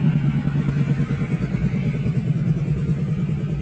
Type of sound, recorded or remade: recorded